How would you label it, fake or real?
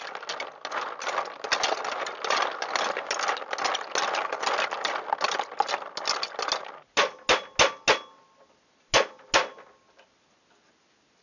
real